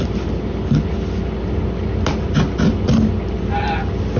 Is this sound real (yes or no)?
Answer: yes